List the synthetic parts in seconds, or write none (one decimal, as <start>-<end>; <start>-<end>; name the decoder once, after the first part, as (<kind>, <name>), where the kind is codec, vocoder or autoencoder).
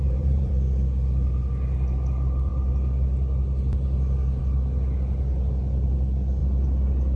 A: 0.0-0.5 (vocoder, BigVGAN v2)